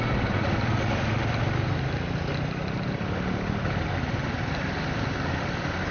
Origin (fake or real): real